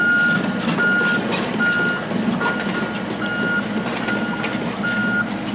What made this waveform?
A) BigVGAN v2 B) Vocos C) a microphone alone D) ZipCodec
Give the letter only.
C